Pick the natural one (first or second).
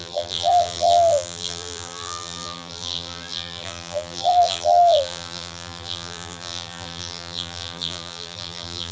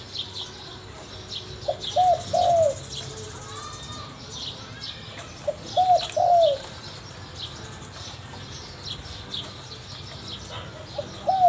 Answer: second